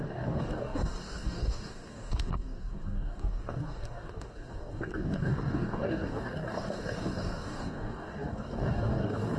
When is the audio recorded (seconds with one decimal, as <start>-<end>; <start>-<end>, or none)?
none